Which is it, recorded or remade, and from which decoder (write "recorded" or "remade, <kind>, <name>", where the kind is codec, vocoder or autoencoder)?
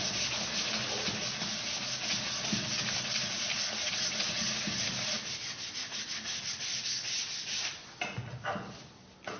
recorded